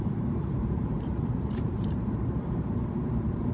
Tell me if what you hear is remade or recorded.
remade